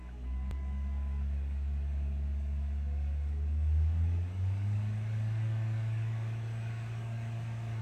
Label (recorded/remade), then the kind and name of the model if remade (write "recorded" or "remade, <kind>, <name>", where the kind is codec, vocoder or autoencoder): remade, codec, DAC